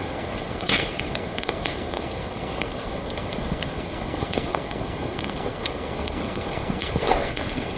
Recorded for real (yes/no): no